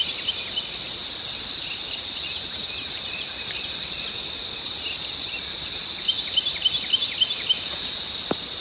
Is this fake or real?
real